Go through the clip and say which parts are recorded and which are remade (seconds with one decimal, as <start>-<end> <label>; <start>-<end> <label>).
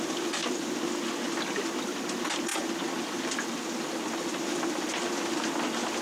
0.0-6.0 recorded